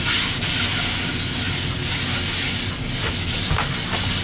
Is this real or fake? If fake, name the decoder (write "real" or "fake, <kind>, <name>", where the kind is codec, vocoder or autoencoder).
real